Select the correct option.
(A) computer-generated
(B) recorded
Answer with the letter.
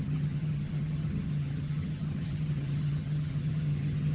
A